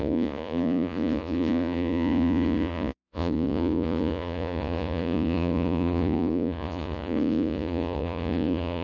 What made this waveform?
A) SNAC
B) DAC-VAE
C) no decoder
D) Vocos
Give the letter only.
D